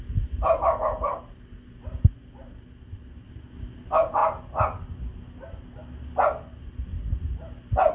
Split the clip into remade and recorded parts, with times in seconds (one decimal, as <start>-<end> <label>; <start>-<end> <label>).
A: 0.0-6.9 recorded; 6.9-7.5 remade; 7.5-7.9 recorded